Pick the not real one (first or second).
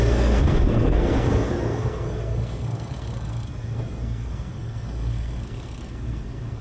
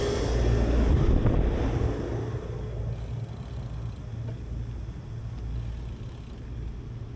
first